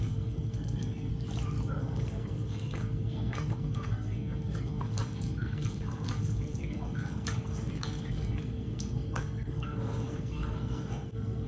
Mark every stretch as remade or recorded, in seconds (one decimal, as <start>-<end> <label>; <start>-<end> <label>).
0.0-1.1 remade; 1.1-1.8 recorded; 1.8-11.5 remade